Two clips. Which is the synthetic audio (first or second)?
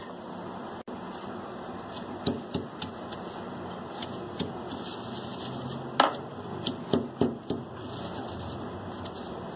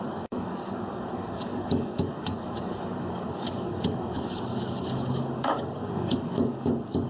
second